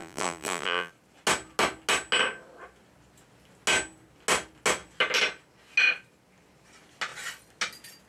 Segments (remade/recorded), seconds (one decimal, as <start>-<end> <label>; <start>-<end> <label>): 0.0-0.9 remade; 0.9-8.1 recorded